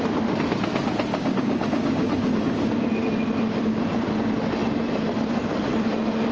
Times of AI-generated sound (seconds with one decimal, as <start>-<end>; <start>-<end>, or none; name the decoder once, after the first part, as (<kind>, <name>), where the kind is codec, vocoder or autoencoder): 1.1-2.7 (codec, DAC)